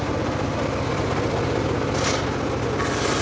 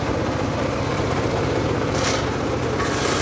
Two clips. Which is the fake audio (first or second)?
second